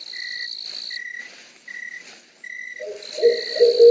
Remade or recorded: recorded